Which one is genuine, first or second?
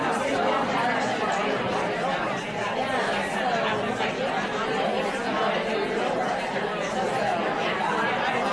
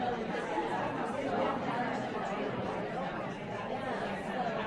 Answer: first